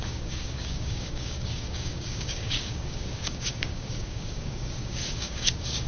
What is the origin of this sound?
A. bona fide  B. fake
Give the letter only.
B